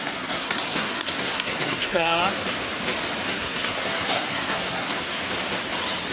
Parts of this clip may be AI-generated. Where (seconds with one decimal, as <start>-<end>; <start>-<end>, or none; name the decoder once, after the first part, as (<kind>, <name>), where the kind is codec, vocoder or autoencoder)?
0.0-2.2 (codec, SNAC); 3.3-5.1